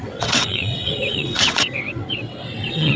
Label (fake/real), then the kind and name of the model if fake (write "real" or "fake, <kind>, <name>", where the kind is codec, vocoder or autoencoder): fake, vocoder, WaveNeXt